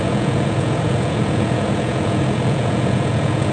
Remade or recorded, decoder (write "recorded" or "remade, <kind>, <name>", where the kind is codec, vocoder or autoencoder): remade, vocoder, Vocos